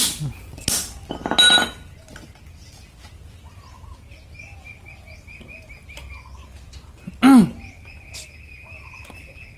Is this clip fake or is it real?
real